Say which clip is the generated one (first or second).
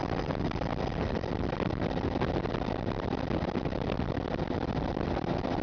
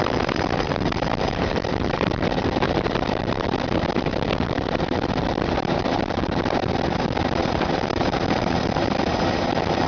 second